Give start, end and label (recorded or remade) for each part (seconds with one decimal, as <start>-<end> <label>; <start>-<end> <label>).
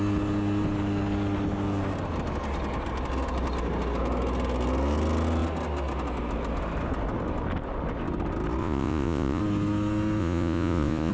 0.0-8.6 recorded; 8.6-9.4 remade; 9.4-10.2 recorded; 10.2-11.1 remade